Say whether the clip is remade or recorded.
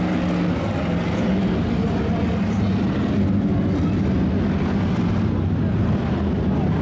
recorded